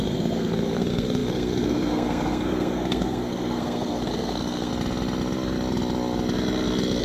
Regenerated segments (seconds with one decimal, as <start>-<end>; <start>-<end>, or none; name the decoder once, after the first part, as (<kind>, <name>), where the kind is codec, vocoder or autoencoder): 0.0-4.7 (codec, SNAC)